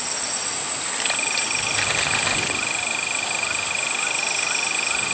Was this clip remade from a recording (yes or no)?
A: no